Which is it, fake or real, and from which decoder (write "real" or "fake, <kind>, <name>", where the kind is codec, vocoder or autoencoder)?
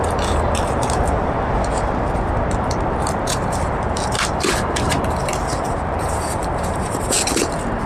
fake, vocoder, BigVGAN v2